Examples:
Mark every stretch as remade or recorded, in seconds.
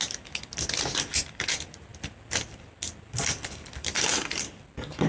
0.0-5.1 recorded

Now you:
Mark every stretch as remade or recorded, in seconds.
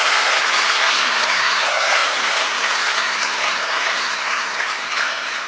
0.0-5.5 remade